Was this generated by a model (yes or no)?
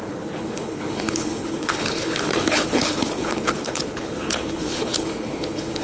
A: yes